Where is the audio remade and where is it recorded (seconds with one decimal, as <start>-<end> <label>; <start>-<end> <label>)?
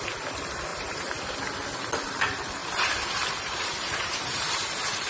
0.0-0.7 recorded; 0.7-1.2 remade; 1.2-2.6 recorded; 2.6-5.1 remade